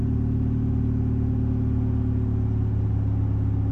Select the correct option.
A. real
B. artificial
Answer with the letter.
A